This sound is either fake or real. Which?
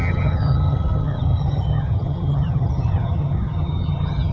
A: fake